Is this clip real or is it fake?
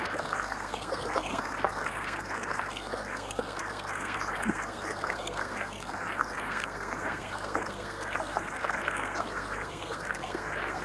fake